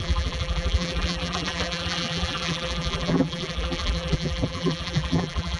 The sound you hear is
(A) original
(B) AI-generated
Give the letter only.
B